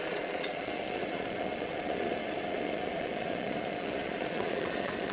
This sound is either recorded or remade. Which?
remade